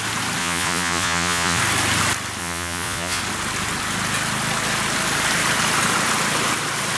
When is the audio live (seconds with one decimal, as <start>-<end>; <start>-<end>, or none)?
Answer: 0.0-0.4; 1.6-2.4; 3.2-7.0